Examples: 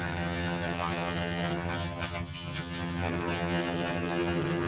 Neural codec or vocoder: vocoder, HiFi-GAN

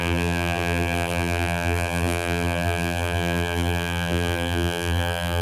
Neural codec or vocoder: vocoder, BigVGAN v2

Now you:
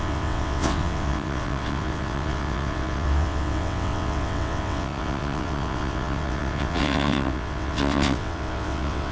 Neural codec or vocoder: vocoder, WaveNeXt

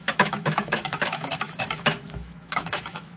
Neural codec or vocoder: autoencoder, DAC-VAE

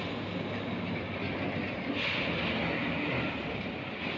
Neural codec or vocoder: none